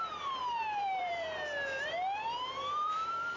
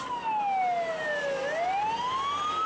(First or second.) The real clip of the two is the second